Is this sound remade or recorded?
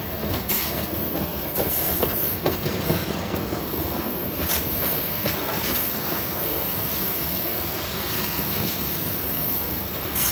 remade